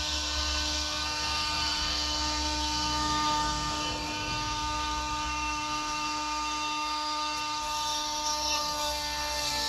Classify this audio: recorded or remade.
remade